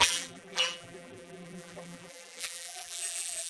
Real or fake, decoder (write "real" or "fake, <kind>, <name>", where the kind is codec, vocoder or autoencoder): fake, vocoder, BigVGAN v2